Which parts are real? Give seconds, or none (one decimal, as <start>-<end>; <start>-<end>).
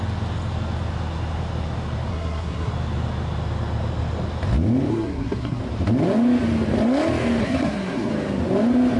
0.0-2.1; 2.7-4.9; 5.6-7.4; 8.1-9.0